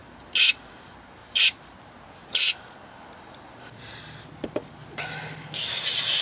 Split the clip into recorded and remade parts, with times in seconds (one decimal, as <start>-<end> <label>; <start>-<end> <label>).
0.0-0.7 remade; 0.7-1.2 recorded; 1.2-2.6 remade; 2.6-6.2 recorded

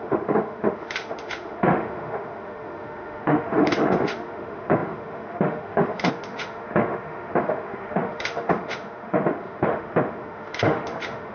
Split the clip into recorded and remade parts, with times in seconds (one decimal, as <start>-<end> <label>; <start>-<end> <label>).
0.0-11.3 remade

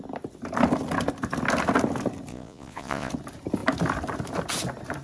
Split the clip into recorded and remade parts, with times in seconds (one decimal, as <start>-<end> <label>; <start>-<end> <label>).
0.0-2.3 recorded; 2.3-3.1 remade; 3.1-5.0 recorded

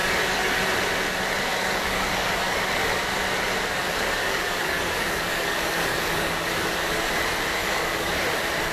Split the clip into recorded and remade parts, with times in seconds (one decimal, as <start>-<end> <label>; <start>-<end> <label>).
0.0-0.6 remade; 0.6-1.5 recorded; 1.5-3.0 remade; 3.0-3.8 recorded; 3.8-7.1 remade; 7.1-7.6 recorded; 7.6-8.1 remade; 8.1-8.7 recorded